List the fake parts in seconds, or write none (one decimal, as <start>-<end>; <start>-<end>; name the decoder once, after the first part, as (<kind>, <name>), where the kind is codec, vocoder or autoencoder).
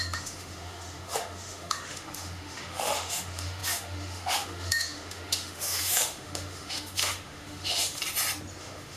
0.0-8.0 (autoencoder, DAC-VAE); 8.6-9.0